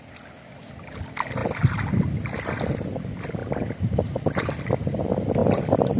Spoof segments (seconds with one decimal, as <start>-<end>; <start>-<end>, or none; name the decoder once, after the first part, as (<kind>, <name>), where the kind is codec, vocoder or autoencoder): none

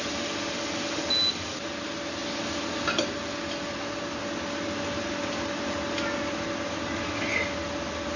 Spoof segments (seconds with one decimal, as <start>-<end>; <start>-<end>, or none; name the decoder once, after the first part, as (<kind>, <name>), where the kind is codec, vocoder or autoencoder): none

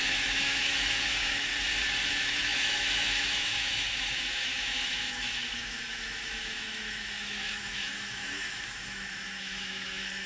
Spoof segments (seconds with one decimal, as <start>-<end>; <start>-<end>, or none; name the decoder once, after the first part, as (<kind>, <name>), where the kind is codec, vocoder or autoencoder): 0.0-1.5 (autoencoder, DAC-VAE); 2.1-10.3

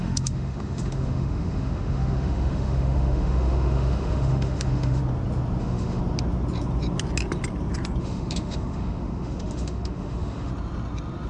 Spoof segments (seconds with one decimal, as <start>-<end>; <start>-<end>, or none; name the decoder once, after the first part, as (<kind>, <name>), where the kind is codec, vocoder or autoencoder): 0.0-5.0 (autoencoder, DAC-VAE); 5.6-6.0; 8.0-10.5

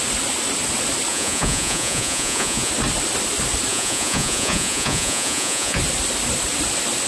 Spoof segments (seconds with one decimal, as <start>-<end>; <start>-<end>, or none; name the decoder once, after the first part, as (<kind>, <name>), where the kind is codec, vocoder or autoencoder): 1.1-2.7 (vocoder, Vocos); 3.7-5.8